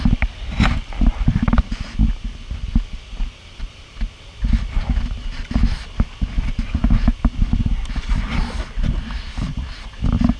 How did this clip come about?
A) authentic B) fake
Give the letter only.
A